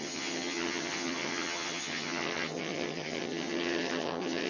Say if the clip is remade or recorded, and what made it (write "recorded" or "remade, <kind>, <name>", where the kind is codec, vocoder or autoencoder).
remade, vocoder, HiFi-GAN